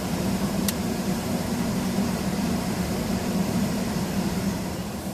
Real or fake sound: fake